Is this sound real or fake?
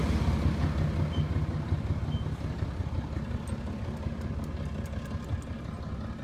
real